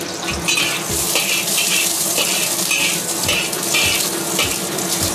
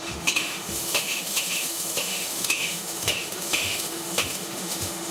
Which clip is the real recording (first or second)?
first